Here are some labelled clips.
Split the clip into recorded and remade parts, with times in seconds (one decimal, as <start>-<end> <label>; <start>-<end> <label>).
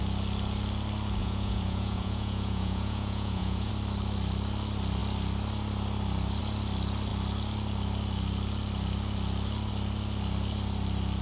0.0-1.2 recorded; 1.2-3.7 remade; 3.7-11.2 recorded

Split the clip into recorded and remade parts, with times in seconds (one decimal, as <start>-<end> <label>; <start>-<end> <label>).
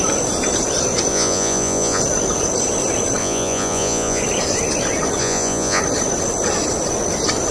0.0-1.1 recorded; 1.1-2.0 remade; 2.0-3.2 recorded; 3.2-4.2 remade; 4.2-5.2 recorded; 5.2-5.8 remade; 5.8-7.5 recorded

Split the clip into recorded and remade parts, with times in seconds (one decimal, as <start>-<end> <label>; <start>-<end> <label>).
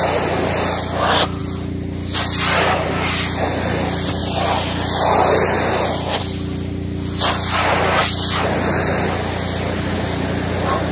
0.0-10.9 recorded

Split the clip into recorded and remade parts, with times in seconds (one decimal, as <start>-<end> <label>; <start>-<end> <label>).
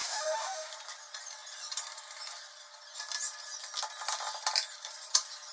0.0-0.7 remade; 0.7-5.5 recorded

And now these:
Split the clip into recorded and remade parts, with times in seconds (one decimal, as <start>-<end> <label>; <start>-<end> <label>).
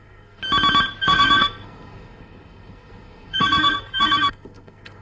0.0-0.4 remade; 0.4-1.0 recorded; 1.0-5.0 remade